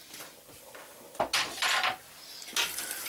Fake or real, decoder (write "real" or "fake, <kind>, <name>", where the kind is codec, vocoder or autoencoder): real